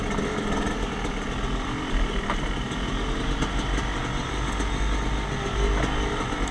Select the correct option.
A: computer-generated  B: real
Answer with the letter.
B